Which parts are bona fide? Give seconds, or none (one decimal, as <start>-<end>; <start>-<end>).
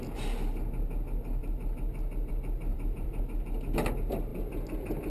0.0-1.4; 2.3-2.7; 3.2-5.1